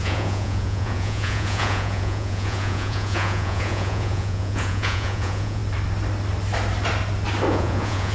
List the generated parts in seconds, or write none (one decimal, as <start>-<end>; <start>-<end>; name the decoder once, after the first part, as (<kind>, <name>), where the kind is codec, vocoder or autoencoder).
0.0-5.6 (vocoder, Vocos); 7.5-8.1